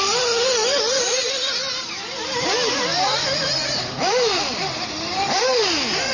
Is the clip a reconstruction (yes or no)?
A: no